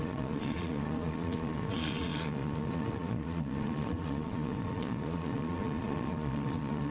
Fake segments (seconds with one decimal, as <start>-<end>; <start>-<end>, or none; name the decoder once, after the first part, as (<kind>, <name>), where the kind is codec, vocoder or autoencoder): 0.0-6.9 (vocoder, Vocos)